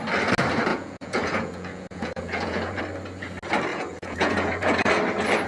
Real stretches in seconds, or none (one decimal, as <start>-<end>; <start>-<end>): 0.0-0.7; 2.8-3.7; 4.9-5.5